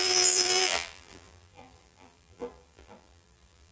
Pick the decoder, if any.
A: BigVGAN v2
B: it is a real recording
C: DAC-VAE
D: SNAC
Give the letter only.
A